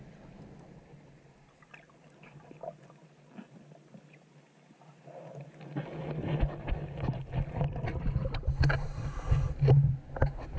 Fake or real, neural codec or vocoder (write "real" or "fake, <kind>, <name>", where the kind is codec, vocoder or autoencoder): real